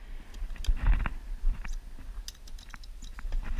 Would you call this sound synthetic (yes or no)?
no